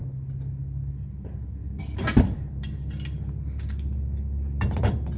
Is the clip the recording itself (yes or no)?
yes